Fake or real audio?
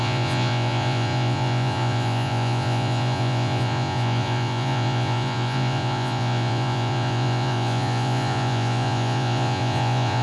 fake